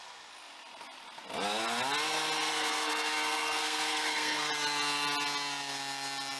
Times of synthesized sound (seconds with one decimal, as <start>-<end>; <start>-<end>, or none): 2.5-4.5